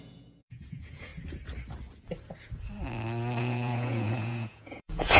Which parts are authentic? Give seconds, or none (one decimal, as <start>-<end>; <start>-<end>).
1.1-3.4